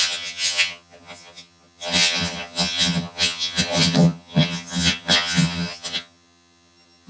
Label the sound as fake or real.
fake